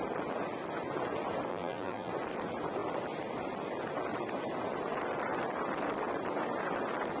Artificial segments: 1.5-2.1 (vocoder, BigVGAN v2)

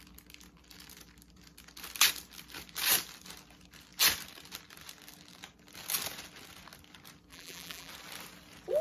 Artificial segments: 7.3-7.9 (vocoder, BigVGAN v2)

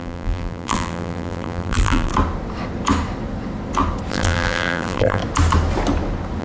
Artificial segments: 0.0-2.1 (vocoder, BigVGAN v2); 4.1-5.2

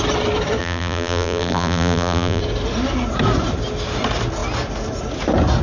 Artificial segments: 0.6-2.4 (vocoder, BigVGAN v2)

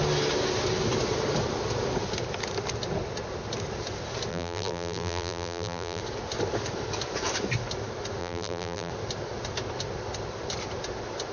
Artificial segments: 4.3-6.0 (vocoder, BigVGAN v2); 8.2-8.9